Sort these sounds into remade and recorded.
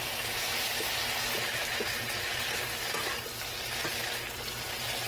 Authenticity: recorded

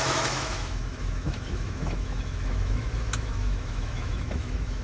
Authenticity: remade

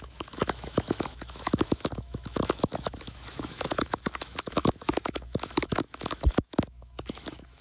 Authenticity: remade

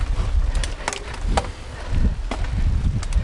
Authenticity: recorded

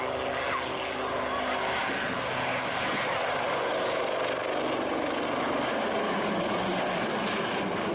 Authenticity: recorded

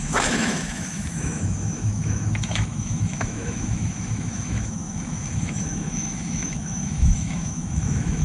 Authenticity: remade